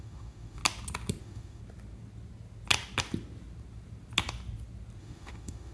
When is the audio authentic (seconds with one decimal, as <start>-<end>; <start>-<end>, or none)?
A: 0.6-1.2; 1.6-5.0